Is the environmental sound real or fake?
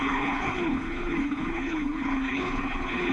fake